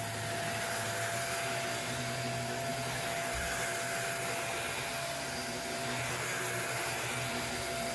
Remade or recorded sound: recorded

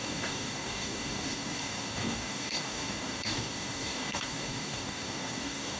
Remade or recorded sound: remade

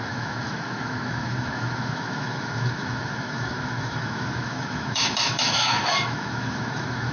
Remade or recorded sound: remade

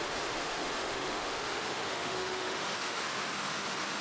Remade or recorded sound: remade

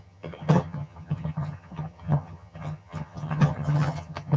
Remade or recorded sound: remade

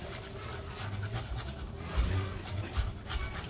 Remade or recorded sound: recorded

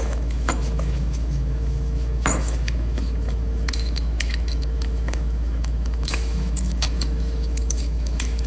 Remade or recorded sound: remade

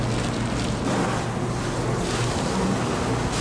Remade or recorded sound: recorded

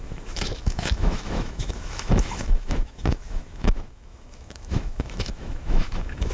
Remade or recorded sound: remade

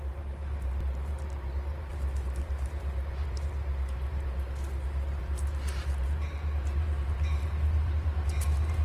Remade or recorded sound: remade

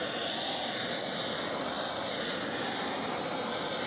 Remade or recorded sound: recorded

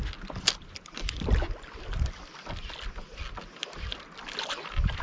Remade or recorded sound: recorded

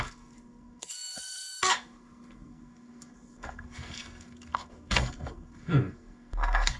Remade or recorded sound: remade